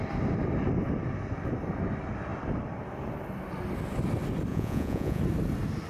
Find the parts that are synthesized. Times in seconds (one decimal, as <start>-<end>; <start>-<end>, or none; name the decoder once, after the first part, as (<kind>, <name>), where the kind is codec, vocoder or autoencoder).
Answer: 4.5-5.2 (vocoder, Vocos)